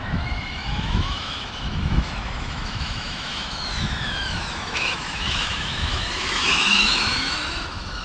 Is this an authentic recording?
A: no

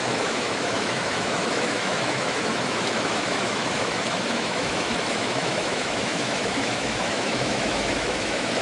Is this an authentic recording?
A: no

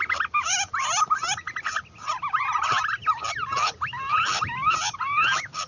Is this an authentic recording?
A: yes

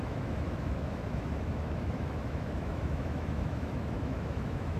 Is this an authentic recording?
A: no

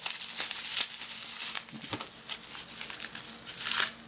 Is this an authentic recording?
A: yes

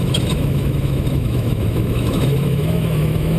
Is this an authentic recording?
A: no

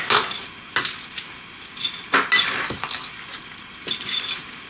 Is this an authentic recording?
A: yes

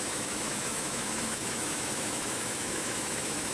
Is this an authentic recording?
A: no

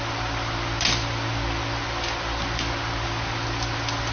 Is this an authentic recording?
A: yes